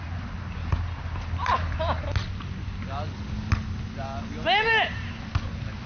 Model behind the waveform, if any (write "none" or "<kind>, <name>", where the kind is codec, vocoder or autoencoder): none